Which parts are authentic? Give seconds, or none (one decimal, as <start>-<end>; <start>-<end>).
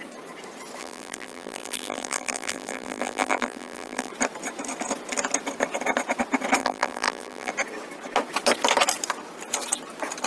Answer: 0.0-0.8; 4.1-6.6; 7.5-10.3